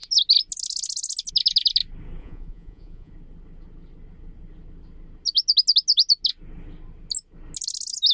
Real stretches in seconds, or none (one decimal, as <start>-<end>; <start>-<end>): 0.0-2.2; 3.1-8.1